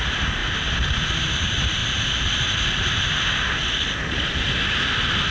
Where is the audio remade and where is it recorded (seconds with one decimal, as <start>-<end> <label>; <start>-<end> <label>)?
0.0-5.3 recorded

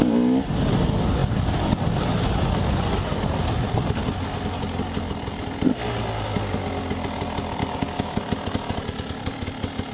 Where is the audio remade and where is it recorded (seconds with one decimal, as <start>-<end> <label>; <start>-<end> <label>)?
0.0-7.6 recorded; 7.6-8.2 remade; 8.2-9.9 recorded

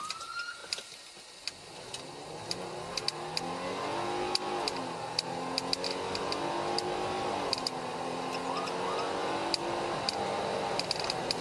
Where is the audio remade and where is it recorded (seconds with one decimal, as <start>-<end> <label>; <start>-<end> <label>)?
0.0-11.4 recorded